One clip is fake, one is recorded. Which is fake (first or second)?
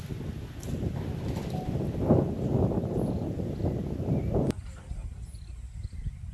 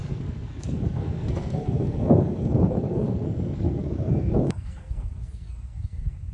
second